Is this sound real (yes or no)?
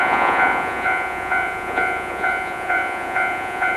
no